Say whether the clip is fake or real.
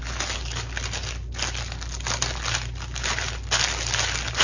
real